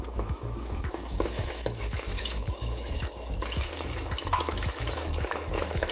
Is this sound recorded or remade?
remade